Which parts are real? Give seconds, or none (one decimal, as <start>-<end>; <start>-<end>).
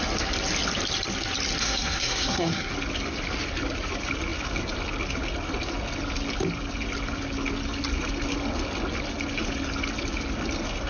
0.0-1.6; 2.7-10.9